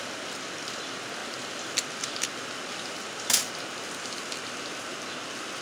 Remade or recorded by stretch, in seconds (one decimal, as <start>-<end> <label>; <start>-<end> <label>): 0.0-5.6 recorded